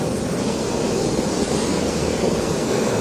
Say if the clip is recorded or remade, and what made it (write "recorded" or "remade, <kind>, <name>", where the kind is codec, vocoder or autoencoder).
remade, codec, SNAC